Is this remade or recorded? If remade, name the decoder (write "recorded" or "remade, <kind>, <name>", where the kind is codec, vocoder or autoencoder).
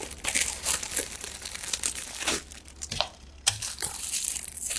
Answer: remade, vocoder, BigVGAN v2